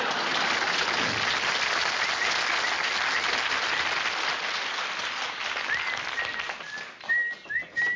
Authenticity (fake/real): real